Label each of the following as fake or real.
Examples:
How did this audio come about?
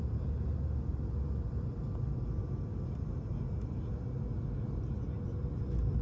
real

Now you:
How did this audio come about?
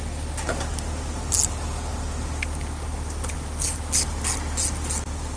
real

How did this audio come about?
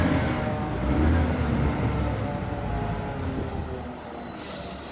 real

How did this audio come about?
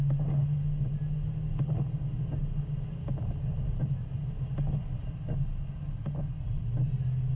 real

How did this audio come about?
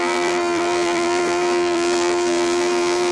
fake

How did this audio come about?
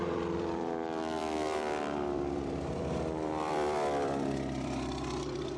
fake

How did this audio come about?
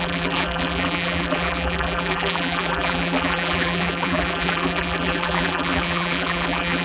fake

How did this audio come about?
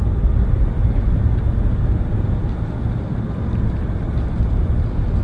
fake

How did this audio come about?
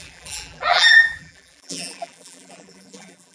fake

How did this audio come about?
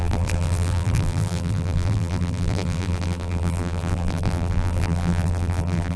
fake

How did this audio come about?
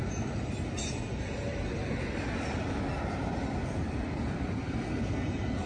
real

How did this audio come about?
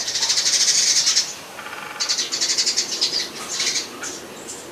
fake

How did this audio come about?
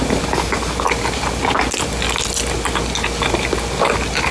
real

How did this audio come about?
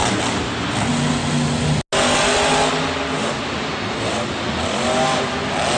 real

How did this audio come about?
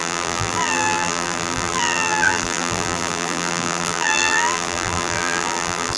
fake